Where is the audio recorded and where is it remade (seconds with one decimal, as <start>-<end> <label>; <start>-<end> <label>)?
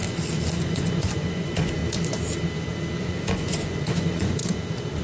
0.0-0.6 recorded; 0.6-1.8 remade; 1.8-3.0 recorded; 3.0-4.4 remade; 4.4-5.0 recorded